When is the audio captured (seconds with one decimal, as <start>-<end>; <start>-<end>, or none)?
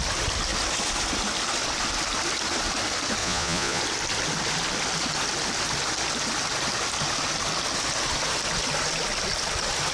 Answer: 0.0-3.2; 3.8-9.9